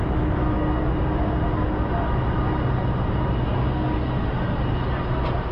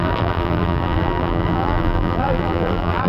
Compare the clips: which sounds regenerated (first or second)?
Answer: second